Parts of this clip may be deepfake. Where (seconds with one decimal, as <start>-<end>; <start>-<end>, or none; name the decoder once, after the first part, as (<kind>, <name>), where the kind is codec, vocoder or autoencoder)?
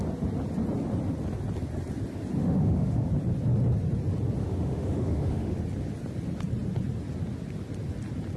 2.4-3.1 (autoencoder, DAC-VAE); 4.4-5.6